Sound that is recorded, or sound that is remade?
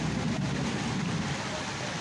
recorded